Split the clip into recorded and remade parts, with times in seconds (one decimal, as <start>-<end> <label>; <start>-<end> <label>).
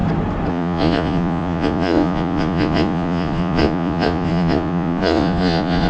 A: 0.0-0.5 recorded; 0.5-5.9 remade